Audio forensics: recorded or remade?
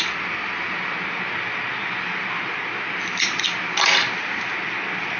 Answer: recorded